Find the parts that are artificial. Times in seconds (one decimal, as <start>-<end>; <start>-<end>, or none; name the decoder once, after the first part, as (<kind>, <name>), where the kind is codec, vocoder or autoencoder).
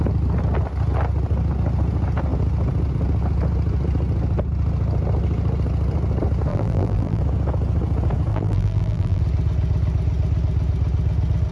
6.5-7.2 (vocoder, BigVGAN v2); 8.3-9.2